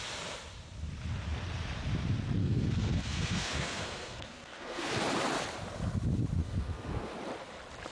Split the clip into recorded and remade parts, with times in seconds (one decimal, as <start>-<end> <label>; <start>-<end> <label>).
0.0-2.4 recorded; 2.4-4.9 remade; 4.9-6.4 recorded; 6.4-7.1 remade; 7.1-7.9 recorded